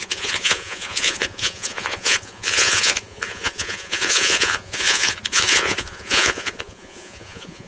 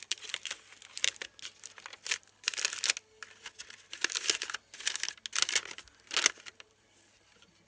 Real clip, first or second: second